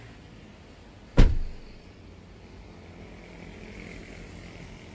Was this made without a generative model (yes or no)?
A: yes